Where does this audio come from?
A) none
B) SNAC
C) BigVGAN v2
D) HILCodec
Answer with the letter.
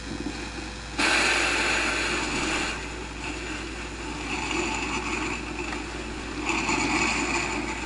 A